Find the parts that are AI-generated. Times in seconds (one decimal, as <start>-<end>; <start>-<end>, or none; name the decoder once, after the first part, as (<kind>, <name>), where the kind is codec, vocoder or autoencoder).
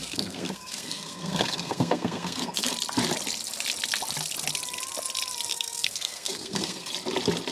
0.0-2.7 (codec, SNAC); 5.5-6.9